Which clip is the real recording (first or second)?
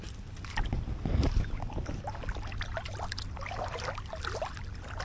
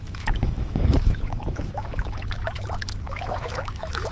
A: first